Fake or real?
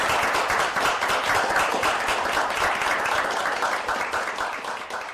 real